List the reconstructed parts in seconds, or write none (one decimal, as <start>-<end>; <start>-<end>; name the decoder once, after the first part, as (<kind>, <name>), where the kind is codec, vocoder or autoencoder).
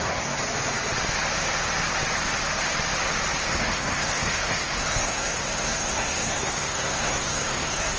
0.0-0.4 (codec, SNAC); 3.5-8.0